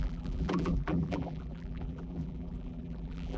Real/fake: fake